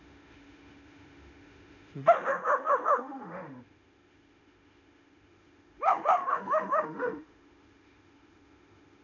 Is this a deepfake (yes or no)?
yes